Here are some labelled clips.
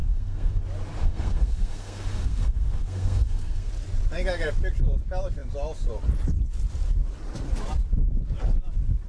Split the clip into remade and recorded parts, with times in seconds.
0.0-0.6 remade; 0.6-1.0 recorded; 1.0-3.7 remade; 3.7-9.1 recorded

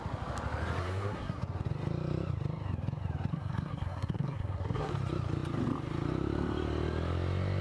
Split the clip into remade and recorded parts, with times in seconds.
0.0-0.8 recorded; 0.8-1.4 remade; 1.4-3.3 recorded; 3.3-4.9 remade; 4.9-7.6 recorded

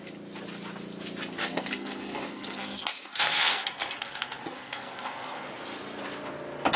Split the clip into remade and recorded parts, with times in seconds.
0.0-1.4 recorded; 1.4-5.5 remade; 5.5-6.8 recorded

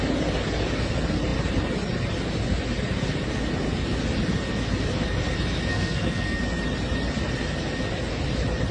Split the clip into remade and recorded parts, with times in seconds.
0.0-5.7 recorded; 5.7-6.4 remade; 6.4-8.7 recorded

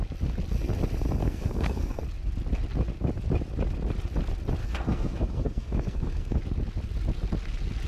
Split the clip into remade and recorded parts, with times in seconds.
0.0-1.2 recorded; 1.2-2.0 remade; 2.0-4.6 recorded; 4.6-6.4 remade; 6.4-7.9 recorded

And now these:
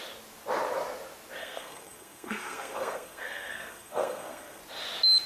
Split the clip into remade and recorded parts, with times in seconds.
0.0-1.4 recorded; 1.4-4.6 remade; 4.6-5.3 recorded

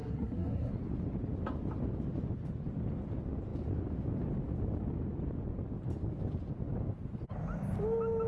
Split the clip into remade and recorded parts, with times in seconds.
0.0-0.7 remade; 0.7-8.3 recorded